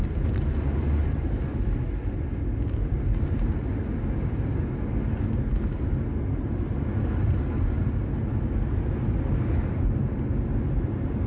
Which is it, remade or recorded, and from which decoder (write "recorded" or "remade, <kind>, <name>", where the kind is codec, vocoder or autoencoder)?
recorded